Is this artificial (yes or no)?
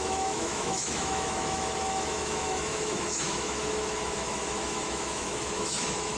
yes